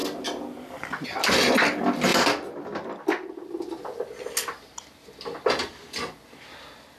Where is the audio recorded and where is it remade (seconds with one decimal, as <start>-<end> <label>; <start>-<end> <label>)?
0.0-7.0 recorded